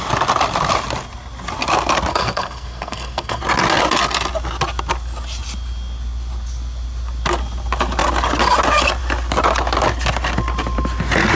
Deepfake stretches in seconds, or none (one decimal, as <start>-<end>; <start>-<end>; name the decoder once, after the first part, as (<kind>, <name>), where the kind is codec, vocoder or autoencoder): 2.1-3.4 (codec, SNAC)